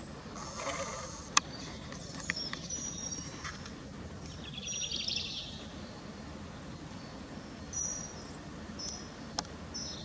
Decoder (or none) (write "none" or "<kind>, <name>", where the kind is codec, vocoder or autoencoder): none